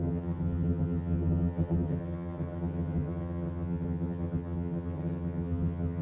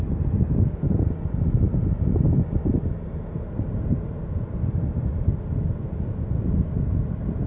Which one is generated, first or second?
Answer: first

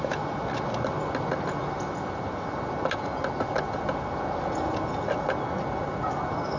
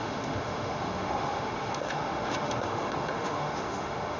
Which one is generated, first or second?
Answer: second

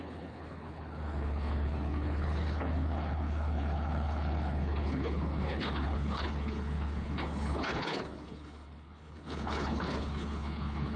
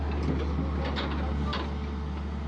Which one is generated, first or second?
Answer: first